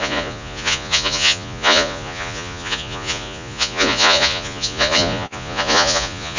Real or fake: fake